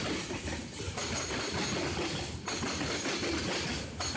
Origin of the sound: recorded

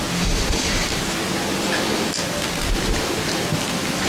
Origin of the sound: recorded